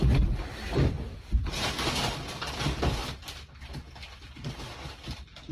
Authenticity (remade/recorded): recorded